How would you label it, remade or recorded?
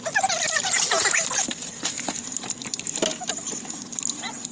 recorded